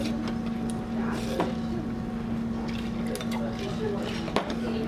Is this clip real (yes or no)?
yes